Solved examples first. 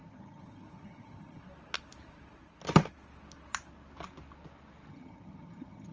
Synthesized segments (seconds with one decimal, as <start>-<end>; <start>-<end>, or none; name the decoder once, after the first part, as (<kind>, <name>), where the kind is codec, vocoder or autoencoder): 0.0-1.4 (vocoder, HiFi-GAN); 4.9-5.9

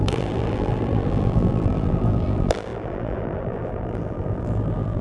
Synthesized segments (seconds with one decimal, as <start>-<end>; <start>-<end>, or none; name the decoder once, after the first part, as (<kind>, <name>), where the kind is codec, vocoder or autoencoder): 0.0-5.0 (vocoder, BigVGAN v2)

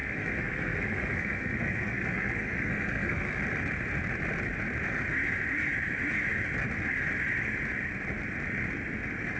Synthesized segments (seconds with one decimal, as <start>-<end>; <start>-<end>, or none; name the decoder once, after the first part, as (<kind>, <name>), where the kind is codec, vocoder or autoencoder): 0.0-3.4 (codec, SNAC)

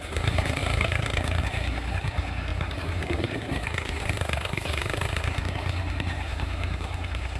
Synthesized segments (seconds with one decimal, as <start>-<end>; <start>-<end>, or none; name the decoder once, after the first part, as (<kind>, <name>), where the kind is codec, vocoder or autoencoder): 0.0-7.4 (codec, SNAC)